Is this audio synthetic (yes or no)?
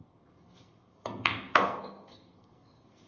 yes